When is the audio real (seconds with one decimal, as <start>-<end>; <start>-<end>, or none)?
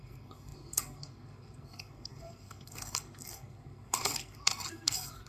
none